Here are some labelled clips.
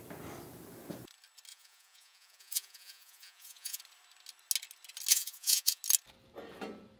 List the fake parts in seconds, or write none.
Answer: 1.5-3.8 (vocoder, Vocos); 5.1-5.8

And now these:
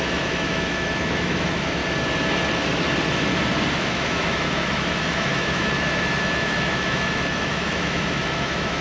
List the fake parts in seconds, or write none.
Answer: 0.0-1.8 (autoencoder, DAC-VAE); 3.7-8.8